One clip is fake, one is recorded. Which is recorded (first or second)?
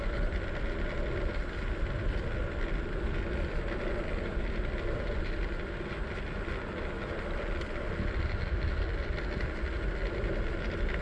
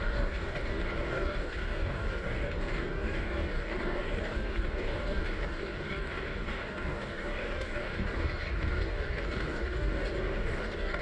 first